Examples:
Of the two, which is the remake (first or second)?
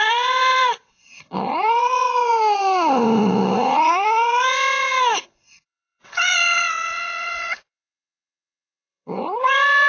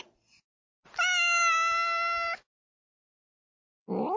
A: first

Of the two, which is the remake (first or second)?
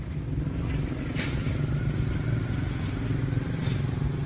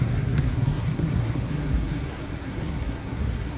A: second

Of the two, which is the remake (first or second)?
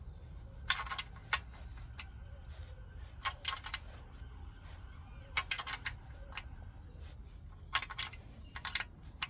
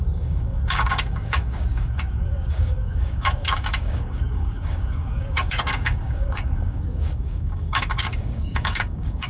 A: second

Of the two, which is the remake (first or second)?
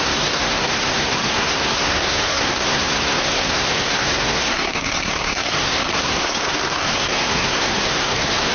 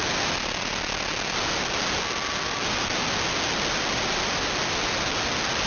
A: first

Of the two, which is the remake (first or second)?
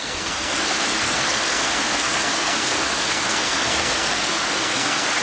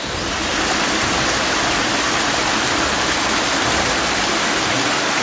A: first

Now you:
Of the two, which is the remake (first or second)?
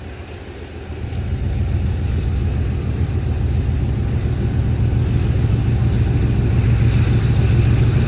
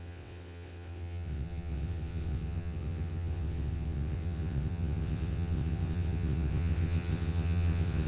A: second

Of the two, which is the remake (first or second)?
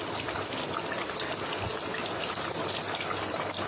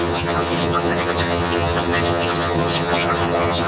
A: second